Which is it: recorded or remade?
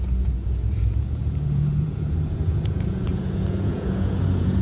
remade